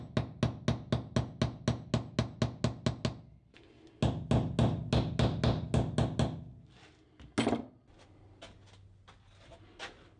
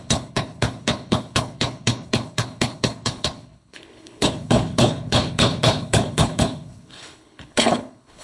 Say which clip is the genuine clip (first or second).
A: first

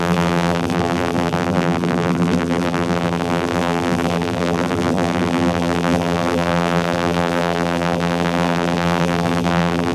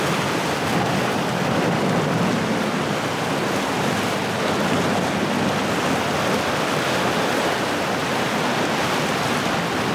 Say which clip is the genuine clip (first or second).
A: second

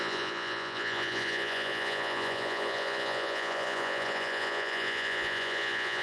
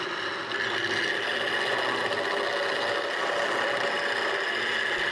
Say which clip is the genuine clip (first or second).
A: second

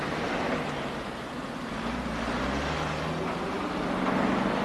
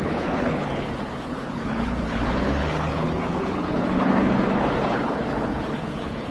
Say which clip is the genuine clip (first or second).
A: first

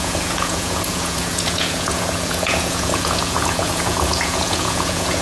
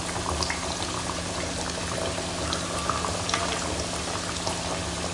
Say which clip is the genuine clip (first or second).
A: second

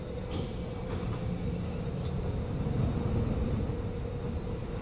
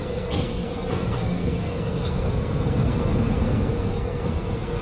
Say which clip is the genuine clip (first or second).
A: first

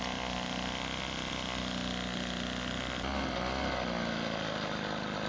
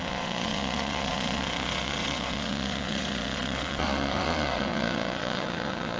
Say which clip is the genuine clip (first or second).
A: first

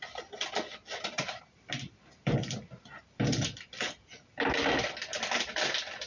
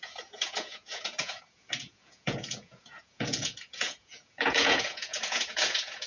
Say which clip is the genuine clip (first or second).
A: first